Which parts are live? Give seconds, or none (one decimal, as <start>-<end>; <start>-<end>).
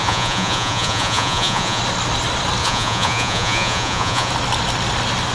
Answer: 1.8-2.6; 4.3-5.3